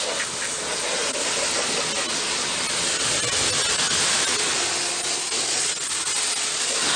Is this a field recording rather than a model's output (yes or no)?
yes